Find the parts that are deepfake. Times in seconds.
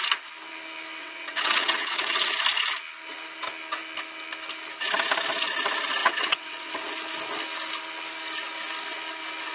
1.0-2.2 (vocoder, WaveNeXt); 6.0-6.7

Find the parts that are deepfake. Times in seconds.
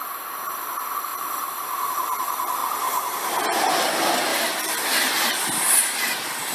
1.1-1.7 (vocoder, BigVGAN v2); 4.3-5.8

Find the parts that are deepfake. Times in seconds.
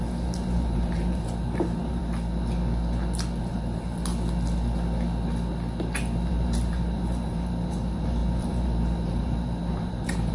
0.0-2.0 (vocoder, BigVGAN v2); 3.4-4.1; 6.3-10.3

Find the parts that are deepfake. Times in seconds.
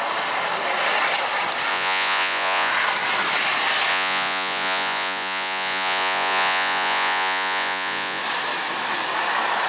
1.7-2.7 (vocoder, Vocos); 3.9-8.2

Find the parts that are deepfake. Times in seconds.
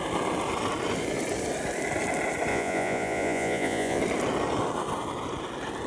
2.5-4.0 (vocoder, Vocos)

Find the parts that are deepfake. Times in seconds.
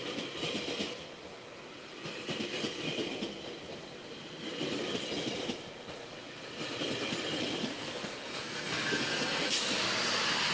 7.7-9.8 (codec, SNAC)